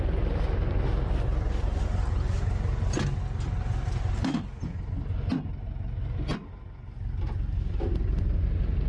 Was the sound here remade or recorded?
recorded